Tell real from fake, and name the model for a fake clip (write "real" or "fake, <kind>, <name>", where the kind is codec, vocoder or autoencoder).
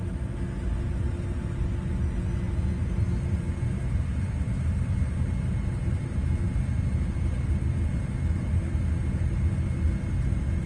real